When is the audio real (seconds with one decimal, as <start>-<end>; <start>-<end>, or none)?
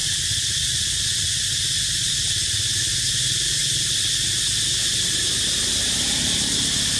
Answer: 0.0-7.0